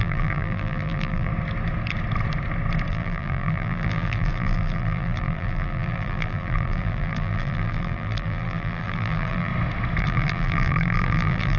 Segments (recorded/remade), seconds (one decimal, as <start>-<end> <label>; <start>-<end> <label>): 0.0-1.3 remade; 1.3-2.9 recorded; 2.9-9.5 remade; 9.5-10.0 recorded; 10.0-11.6 remade